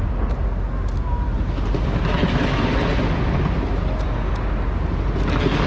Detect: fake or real real